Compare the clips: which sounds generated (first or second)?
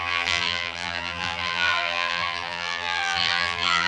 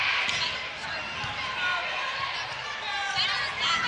first